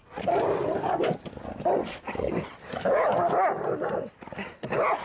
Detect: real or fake real